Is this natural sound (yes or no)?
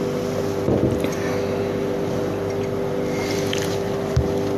yes